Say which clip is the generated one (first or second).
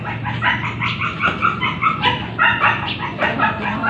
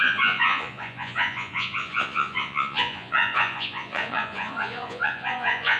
second